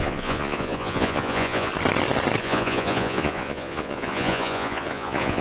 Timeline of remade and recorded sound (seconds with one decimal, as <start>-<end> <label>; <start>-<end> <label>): 0.0-1.7 remade; 1.7-2.4 recorded; 2.4-5.4 remade

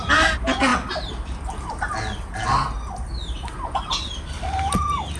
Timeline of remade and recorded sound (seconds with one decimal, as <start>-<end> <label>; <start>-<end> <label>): 0.0-5.2 recorded

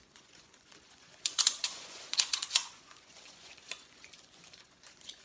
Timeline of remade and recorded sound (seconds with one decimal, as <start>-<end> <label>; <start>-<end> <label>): 0.0-5.2 remade

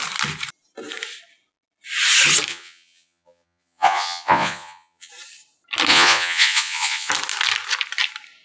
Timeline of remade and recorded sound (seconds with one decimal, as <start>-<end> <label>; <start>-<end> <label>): 0.0-2.5 recorded; 2.5-5.1 remade; 5.1-5.9 recorded; 5.9-7.1 remade; 7.1-8.4 recorded

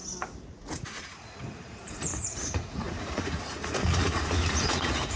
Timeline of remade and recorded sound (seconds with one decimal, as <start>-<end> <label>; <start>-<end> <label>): 0.0-0.5 recorded; 0.5-5.2 remade

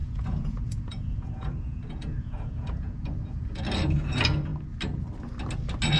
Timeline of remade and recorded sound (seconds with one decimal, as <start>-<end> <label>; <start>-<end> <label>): 0.0-3.6 remade; 3.6-6.0 recorded

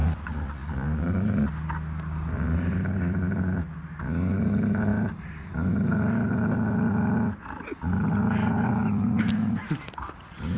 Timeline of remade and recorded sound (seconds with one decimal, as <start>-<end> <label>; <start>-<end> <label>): 0.0-1.5 remade; 1.5-10.6 recorded